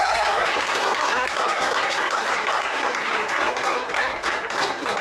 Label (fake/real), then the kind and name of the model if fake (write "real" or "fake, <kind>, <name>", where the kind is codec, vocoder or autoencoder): fake, codec, SNAC